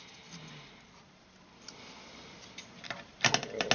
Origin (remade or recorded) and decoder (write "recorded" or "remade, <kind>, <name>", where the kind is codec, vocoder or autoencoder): recorded